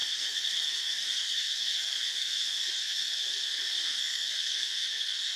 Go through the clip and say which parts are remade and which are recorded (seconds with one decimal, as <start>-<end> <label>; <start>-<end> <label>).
0.0-5.4 remade